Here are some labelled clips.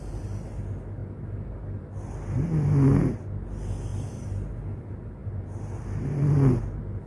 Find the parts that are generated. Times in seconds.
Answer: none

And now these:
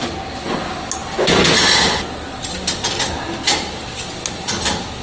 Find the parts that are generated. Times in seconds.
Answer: none

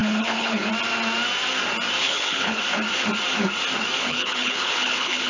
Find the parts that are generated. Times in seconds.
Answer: 0.0-0.7 (codec, HILCodec); 2.0-2.6; 4.0-5.3

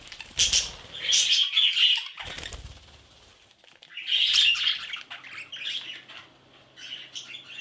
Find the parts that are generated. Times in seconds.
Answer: none

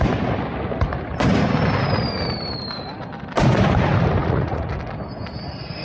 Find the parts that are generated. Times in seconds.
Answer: 4.2-4.7 (vocoder, Vocos)

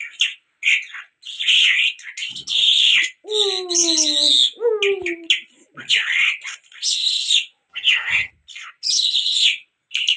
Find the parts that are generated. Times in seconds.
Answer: 7.7-8.3 (vocoder, HiFi-GAN)

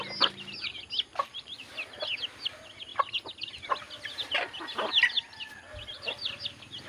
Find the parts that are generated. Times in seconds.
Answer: none